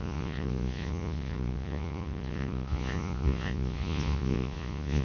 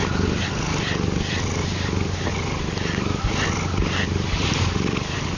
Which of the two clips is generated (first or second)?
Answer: first